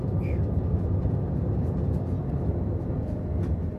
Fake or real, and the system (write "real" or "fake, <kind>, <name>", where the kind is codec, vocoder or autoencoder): real